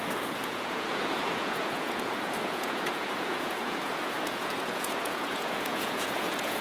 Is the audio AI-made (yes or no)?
yes